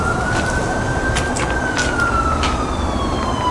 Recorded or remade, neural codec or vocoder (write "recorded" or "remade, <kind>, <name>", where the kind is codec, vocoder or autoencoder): recorded